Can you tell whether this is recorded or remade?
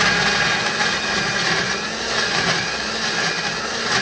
recorded